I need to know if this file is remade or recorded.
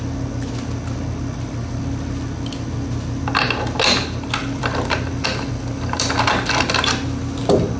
recorded